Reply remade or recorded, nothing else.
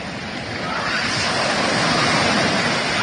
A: recorded